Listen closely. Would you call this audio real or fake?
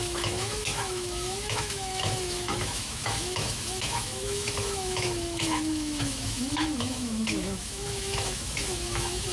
fake